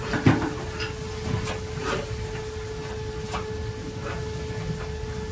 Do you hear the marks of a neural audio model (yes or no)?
no